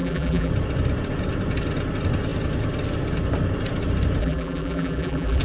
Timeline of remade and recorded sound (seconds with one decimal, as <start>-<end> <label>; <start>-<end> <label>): 0.0-0.5 remade; 0.5-4.2 recorded; 4.2-5.4 remade